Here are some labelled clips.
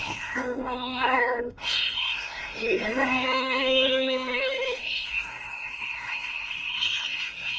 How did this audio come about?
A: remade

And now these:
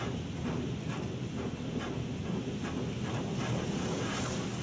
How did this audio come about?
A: recorded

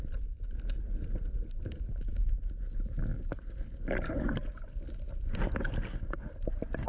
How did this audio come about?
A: recorded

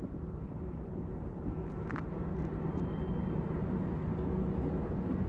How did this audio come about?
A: recorded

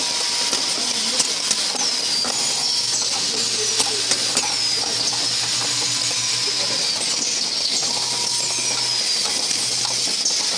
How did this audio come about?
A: recorded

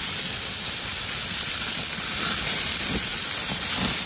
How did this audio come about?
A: remade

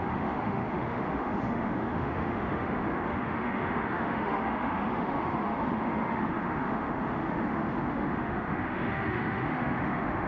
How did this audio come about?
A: remade